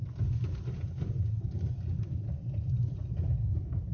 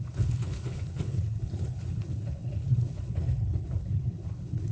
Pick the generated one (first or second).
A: second